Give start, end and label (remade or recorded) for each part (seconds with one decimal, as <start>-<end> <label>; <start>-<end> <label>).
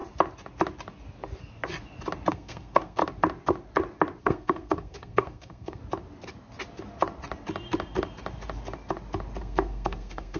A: 0.0-2.3 recorded; 2.3-3.0 remade; 3.0-4.2 recorded; 4.2-5.8 remade; 5.8-9.4 recorded; 9.4-10.4 remade